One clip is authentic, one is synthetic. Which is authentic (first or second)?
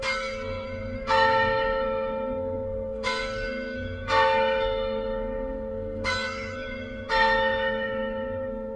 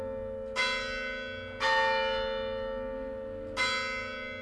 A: second